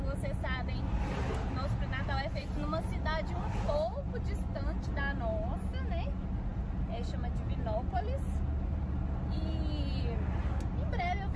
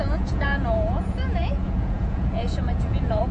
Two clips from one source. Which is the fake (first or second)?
second